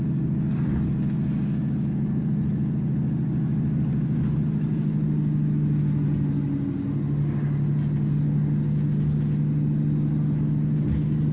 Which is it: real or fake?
real